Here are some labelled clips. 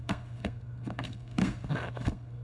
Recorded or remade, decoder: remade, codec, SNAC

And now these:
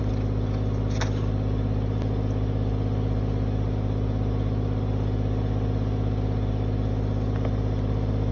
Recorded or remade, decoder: recorded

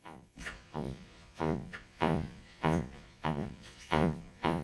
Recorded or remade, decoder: remade, vocoder, Vocos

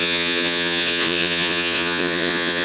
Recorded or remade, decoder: remade, vocoder, Vocos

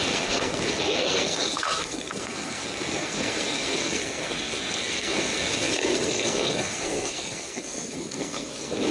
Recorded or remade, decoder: remade, codec, SNAC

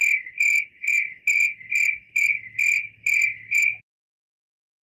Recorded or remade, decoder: recorded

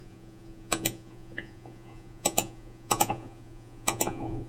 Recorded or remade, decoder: remade, vocoder, Vocos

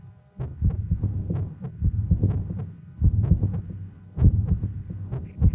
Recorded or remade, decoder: recorded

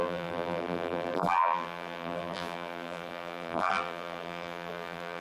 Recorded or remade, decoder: remade, vocoder, BigVGAN v2